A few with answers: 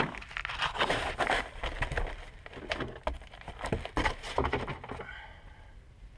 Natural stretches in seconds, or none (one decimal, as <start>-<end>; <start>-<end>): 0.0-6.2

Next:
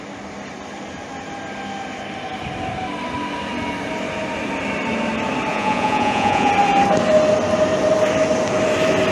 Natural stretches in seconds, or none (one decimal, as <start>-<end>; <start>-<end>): 0.0-5.5; 6.5-9.1

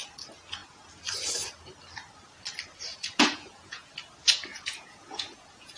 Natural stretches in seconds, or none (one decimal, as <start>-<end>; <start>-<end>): 0.0-2.9; 3.9-4.5